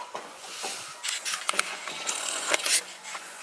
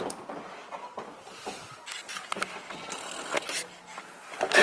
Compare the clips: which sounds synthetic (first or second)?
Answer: first